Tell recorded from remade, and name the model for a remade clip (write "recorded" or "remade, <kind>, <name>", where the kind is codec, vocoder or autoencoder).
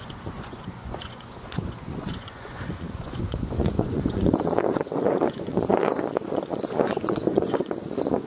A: remade, vocoder, Vocos